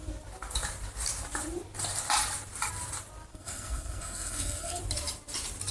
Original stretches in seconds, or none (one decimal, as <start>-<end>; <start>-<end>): 0.0-3.3; 4.8-5.7